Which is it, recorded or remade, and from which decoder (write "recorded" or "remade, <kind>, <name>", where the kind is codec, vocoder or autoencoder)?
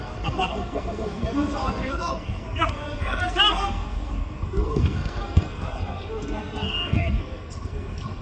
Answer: remade, codec, SNAC